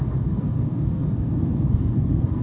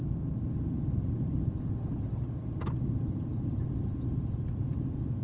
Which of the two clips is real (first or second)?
second